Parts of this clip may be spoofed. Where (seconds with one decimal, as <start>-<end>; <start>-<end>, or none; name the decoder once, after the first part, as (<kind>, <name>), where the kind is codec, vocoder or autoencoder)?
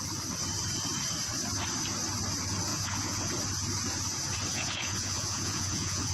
2.7-3.3 (vocoder, Vocos); 4.5-6.1